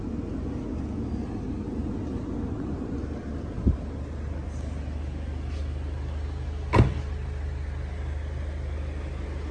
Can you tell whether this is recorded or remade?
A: recorded